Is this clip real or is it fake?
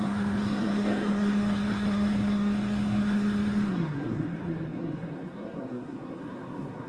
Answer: fake